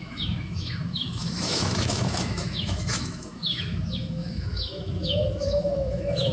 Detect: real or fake fake